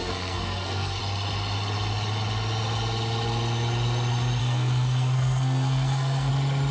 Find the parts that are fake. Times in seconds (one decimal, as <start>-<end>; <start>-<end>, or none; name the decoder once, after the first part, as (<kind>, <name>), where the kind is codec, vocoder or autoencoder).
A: 0.0-1.0 (codec, SNAC); 4.4-6.3